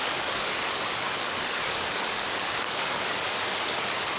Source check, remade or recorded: remade